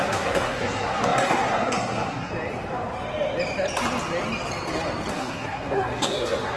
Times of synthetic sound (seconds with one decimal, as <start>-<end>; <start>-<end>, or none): 0.0-2.3; 5.1-6.6

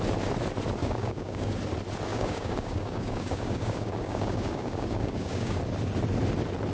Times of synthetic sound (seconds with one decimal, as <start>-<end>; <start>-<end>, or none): 0.8-1.6; 2.1-5.6